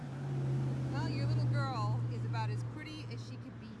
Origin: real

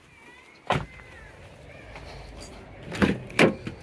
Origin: real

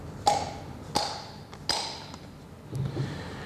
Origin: real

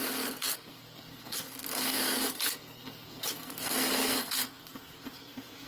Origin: fake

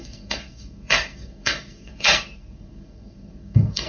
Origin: fake